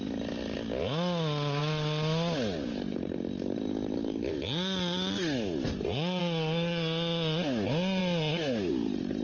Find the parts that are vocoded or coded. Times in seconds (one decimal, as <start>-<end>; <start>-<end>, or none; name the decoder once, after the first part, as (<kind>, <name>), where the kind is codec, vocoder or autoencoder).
none